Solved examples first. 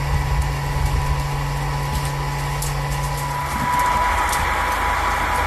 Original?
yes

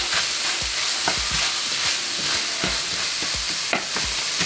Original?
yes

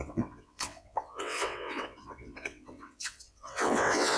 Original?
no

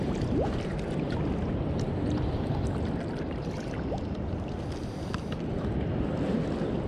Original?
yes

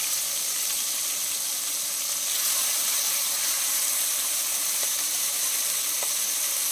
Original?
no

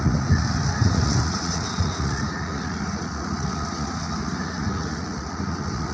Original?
no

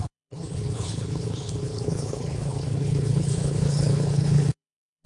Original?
no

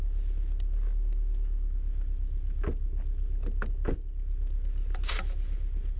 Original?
yes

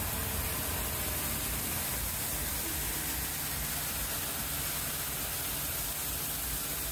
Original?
yes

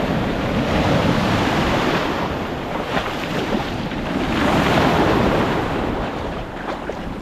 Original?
no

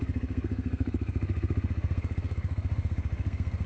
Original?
no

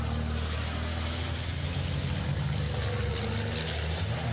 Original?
yes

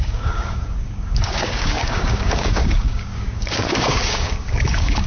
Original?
no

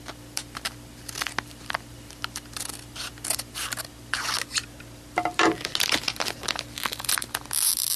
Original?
yes